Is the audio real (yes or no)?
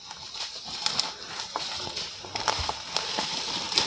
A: yes